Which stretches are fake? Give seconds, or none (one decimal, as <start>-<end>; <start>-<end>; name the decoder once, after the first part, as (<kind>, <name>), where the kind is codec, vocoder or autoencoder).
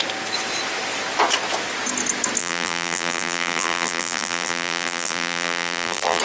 2.4-6.2 (vocoder, BigVGAN v2)